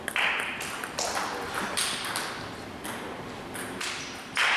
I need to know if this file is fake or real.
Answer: real